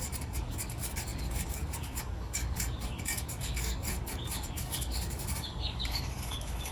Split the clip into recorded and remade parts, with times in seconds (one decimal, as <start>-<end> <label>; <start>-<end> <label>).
0.0-6.7 remade